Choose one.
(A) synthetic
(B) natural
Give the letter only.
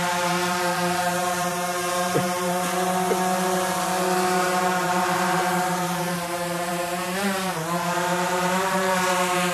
A